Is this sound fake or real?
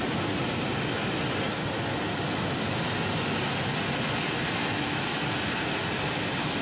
real